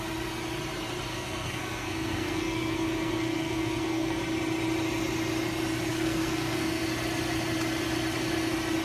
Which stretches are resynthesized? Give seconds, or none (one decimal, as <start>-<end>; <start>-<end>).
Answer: 1.1-4.2; 5.9-6.8